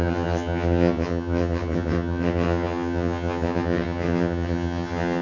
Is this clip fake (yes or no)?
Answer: yes